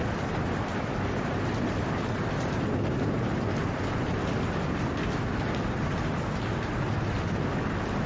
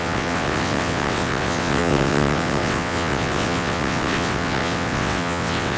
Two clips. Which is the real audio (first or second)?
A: first